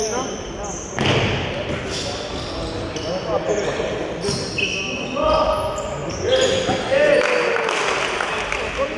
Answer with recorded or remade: recorded